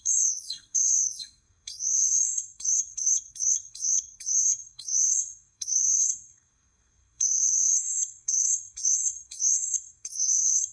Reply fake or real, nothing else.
fake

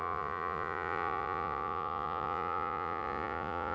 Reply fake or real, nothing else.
fake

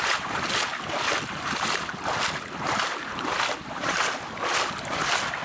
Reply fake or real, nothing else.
real